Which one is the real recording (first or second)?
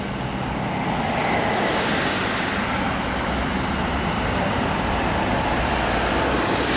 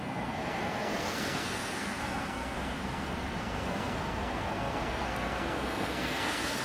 first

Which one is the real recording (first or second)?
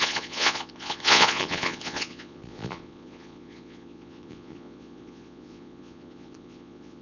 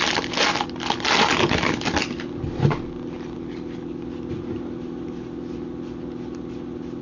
second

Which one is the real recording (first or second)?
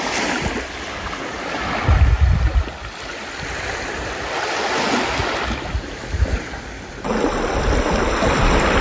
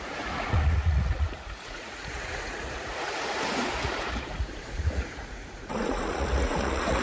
first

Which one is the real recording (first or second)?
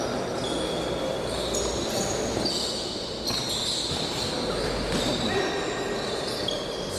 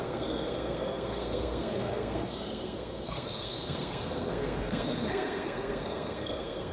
first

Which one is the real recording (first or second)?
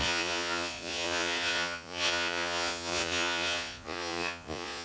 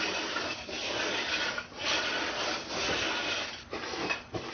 second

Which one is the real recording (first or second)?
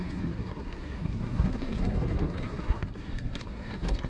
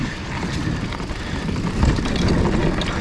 second